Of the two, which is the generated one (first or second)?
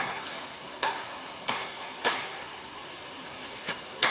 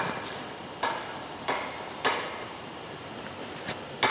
first